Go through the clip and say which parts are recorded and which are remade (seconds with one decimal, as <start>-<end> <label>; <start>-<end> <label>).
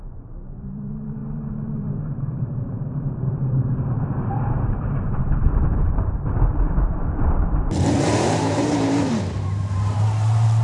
0.0-10.6 remade